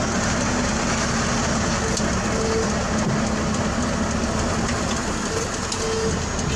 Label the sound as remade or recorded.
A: recorded